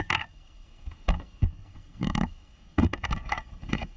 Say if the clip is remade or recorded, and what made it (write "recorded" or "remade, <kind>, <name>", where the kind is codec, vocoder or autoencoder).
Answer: remade, codec, SNAC